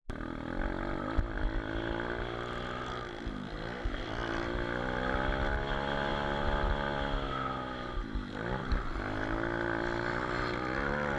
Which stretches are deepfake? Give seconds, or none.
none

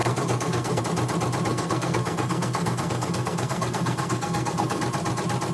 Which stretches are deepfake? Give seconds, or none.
0.0-0.8 (codec, SNAC); 1.5-4.8

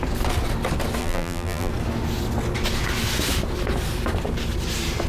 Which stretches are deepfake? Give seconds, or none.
1.0-1.7 (vocoder, BigVGAN v2)

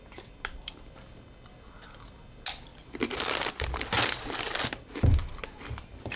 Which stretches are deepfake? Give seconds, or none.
none

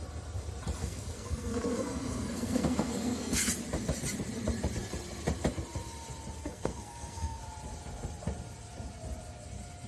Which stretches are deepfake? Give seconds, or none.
0.8-3.5 (codec, SNAC); 6.4-7.4

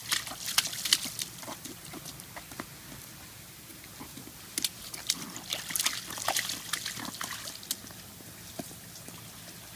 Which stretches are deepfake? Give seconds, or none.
none

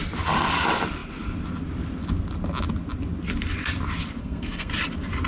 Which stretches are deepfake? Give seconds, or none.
4.2-4.7 (codec, SNAC)